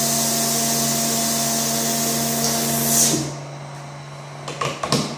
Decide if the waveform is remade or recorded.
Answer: recorded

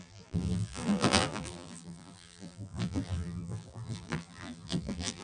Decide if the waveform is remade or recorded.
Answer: remade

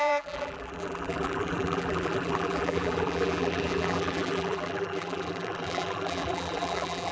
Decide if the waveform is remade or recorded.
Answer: remade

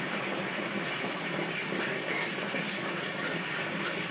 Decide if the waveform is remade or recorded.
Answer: recorded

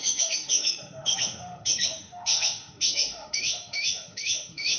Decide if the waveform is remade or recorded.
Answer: remade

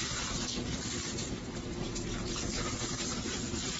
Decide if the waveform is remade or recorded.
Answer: recorded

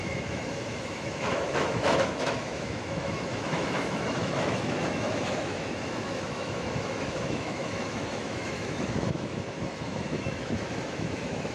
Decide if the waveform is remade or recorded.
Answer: remade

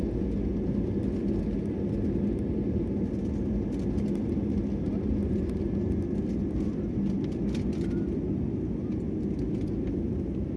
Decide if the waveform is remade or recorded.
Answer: recorded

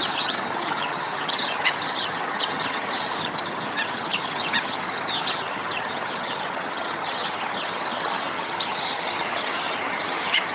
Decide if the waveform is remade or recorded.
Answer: remade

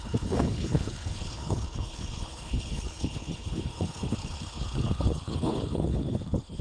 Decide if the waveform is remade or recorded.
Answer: remade